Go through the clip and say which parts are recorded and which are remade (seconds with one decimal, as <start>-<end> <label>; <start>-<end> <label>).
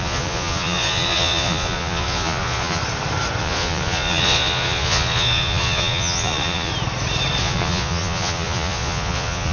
0.0-2.8 remade; 2.8-3.4 recorded; 3.4-6.7 remade; 6.7-7.4 recorded; 7.4-9.5 remade